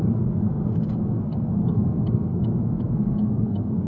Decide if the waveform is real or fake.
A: fake